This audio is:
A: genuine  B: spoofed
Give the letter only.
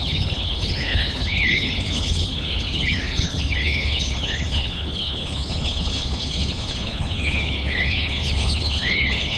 B